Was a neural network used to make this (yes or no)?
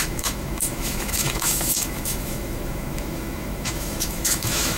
yes